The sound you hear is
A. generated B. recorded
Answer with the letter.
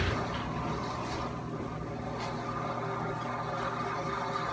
B